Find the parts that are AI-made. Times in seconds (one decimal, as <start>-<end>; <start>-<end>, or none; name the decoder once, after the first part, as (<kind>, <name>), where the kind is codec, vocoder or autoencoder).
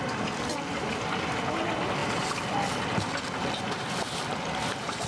none